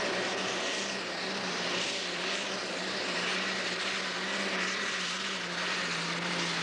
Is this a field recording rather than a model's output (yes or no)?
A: yes